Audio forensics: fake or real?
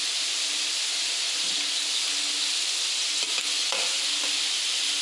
real